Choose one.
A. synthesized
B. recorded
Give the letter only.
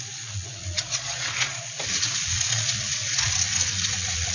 A